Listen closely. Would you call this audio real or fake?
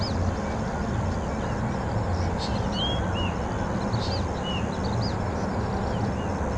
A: real